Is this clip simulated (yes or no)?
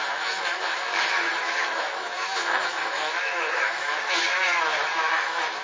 yes